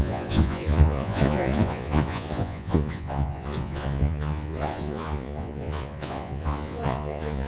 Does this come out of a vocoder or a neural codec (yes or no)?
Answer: yes